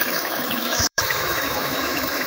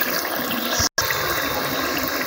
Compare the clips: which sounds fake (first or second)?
first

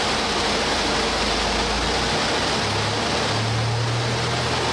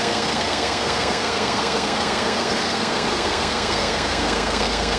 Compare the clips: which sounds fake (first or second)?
second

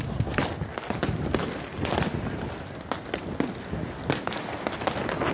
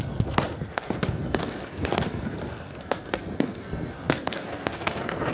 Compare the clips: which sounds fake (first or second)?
second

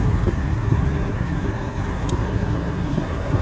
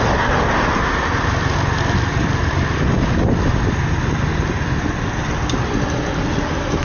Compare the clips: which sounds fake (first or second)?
first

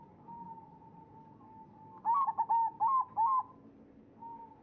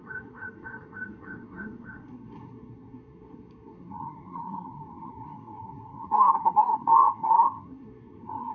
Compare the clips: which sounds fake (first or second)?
second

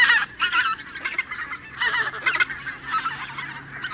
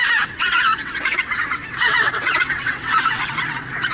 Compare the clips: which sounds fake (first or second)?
second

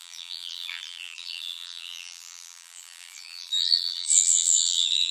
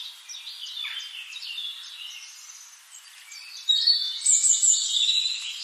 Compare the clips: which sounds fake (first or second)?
first